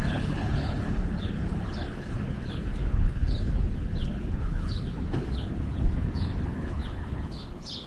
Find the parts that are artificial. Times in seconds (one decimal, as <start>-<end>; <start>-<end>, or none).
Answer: 0.0-7.9